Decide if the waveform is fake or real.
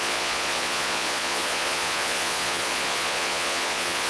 fake